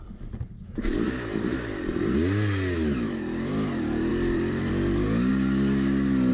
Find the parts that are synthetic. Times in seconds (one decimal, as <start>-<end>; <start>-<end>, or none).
4.1-4.7